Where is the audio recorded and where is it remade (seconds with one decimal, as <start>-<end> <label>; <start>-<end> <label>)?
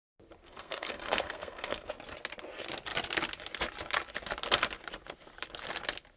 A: 0.0-0.4 recorded; 0.4-1.9 remade; 1.9-6.2 recorded